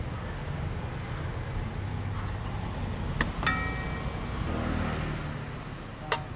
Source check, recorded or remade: recorded